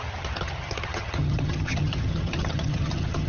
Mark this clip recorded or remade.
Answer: remade